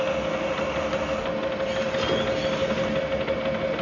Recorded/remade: recorded